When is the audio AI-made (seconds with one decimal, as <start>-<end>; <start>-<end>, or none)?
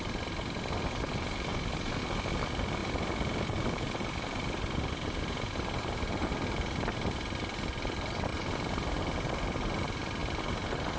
1.5-2.0; 2.8-6.9